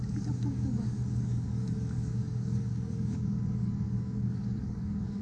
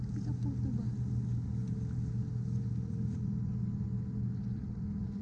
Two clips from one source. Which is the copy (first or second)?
first